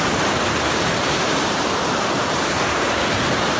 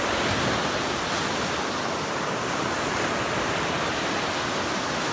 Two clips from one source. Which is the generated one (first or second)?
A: first